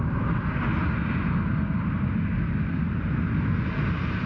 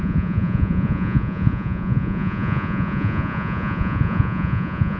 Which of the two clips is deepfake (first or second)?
second